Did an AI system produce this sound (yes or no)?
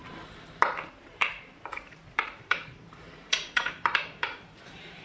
yes